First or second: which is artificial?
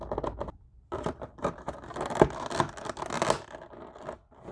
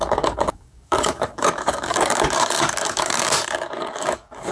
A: second